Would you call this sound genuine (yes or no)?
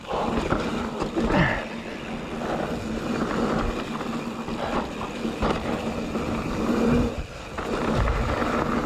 yes